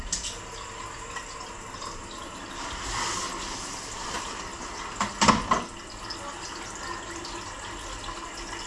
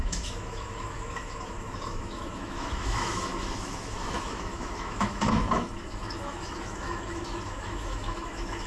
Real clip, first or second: first